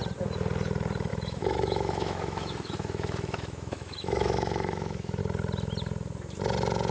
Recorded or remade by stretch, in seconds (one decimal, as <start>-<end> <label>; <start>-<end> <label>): 0.0-1.1 recorded; 1.1-5.2 remade; 5.2-6.9 recorded